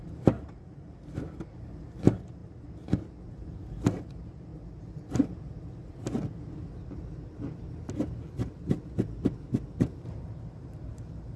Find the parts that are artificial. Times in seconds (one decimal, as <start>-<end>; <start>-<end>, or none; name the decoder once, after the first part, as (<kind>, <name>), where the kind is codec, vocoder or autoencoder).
0.0-4.5 (vocoder, BigVGAN v2); 5.1-6.0; 9.8-11.4